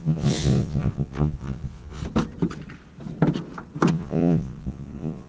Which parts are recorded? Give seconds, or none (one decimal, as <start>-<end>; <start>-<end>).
2.0-3.9